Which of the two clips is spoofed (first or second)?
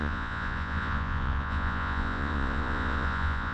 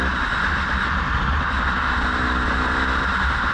first